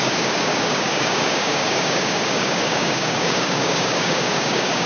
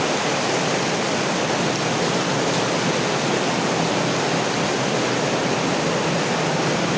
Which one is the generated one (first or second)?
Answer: first